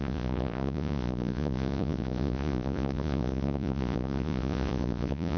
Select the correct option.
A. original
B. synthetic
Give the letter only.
B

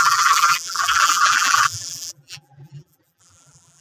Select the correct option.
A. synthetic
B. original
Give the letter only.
A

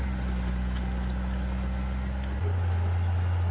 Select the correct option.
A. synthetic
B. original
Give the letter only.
B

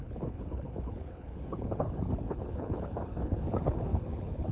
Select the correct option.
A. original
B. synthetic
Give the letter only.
B